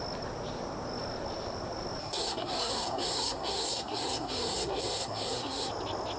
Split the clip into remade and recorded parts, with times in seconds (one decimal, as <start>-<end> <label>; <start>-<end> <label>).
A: 0.0-2.0 recorded; 2.0-5.7 remade; 5.7-6.2 recorded